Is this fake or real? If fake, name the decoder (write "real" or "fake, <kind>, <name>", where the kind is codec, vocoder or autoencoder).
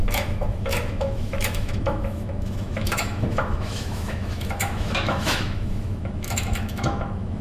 fake, autoencoder, DAC-VAE